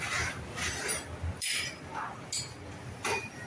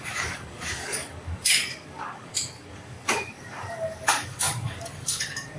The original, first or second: first